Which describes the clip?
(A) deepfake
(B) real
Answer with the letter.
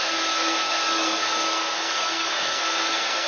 A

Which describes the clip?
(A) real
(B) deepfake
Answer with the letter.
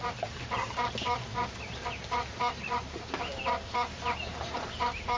A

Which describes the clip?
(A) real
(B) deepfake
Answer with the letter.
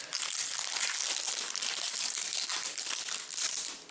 A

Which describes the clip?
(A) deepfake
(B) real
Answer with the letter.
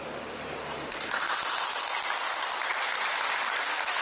B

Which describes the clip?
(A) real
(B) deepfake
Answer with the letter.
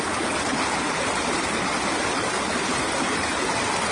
A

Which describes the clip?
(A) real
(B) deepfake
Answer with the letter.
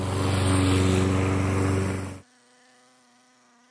A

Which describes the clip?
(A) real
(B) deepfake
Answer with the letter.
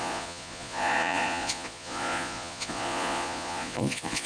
B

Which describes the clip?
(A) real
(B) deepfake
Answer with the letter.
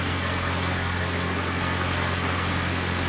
B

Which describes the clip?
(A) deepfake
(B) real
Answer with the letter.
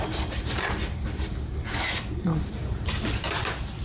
A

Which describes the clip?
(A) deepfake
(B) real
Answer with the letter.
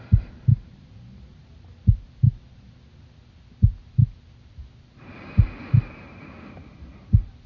B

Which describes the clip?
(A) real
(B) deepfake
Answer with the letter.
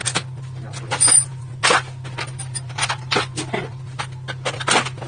A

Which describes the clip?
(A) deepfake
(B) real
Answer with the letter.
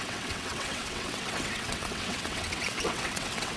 A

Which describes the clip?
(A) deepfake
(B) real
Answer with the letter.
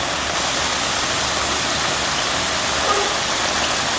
B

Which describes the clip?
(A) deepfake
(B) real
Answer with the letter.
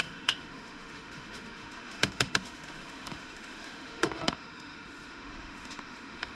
A